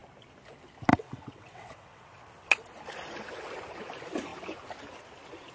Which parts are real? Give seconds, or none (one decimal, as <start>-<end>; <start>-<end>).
0.0-0.9; 2.2-5.5